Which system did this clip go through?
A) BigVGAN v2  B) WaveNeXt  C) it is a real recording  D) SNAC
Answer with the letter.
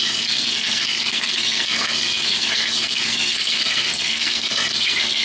D